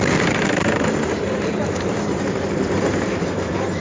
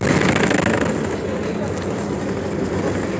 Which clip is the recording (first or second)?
second